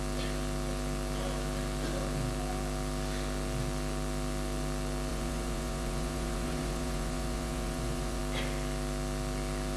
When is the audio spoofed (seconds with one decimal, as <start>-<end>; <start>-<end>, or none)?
5.1-8.2